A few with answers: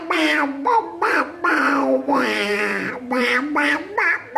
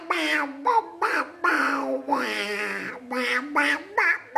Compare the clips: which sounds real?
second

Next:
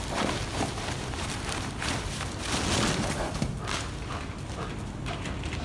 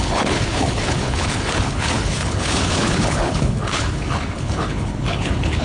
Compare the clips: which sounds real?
first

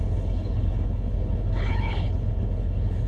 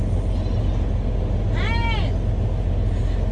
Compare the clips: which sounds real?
second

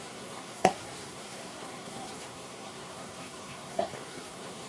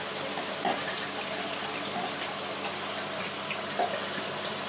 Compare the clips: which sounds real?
second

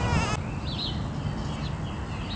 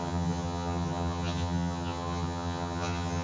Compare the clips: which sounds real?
first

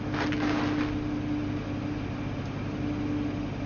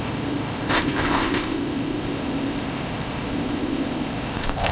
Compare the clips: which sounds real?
first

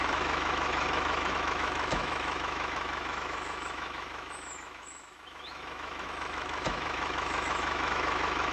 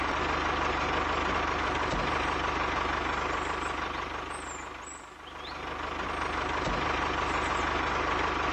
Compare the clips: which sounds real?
second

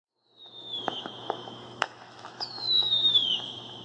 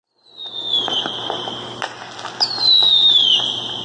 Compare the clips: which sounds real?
second